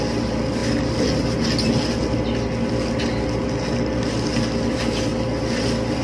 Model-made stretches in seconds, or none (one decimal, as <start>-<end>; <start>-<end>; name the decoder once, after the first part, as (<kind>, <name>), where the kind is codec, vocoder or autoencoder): none